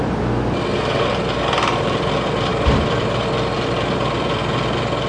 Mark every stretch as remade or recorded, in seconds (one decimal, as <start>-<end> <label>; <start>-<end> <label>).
0.0-2.5 recorded; 2.5-3.2 remade; 3.2-5.1 recorded

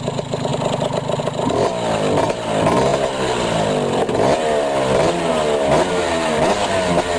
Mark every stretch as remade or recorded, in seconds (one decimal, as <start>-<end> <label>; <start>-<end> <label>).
0.0-5.9 recorded; 5.9-6.5 remade; 6.5-7.2 recorded

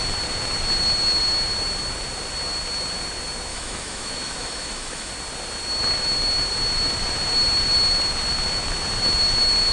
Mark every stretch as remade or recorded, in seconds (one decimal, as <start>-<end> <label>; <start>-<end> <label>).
0.0-3.5 recorded; 3.5-5.1 remade; 5.1-9.7 recorded

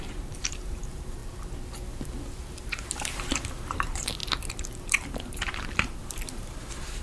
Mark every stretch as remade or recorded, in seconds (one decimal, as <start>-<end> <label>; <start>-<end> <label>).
0.0-1.2 remade; 1.2-2.6 recorded; 2.6-4.2 remade; 4.2-4.9 recorded; 4.9-7.0 remade

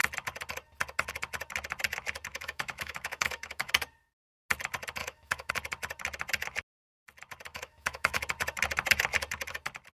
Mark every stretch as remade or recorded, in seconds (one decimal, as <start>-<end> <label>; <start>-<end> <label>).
0.0-2.3 recorded; 2.3-3.7 remade; 3.7-5.0 recorded; 5.0-5.5 remade; 5.5-7.5 recorded; 7.5-8.2 remade; 8.2-10.0 recorded